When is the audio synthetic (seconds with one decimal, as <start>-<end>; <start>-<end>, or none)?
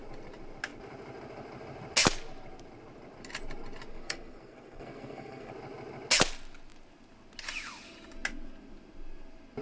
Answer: 3.9-5.5